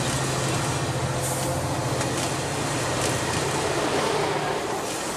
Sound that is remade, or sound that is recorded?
recorded